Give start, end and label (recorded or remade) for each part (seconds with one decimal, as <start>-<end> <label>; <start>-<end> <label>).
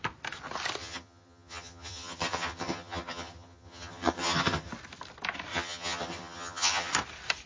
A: 0.0-0.8 recorded; 0.8-4.7 remade; 4.7-5.5 recorded; 5.5-6.9 remade; 6.9-7.5 recorded